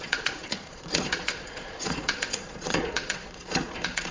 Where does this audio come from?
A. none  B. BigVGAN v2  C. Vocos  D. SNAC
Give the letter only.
C